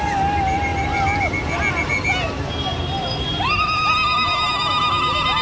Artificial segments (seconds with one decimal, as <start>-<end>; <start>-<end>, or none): none